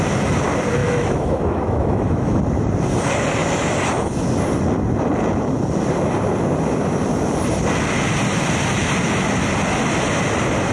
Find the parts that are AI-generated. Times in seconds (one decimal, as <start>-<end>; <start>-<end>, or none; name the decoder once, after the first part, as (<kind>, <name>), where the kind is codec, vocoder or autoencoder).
0.8-2.4 (autoencoder, DAC-VAE)